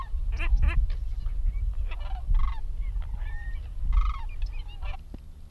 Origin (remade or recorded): recorded